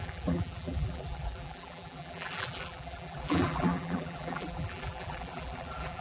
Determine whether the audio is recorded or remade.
remade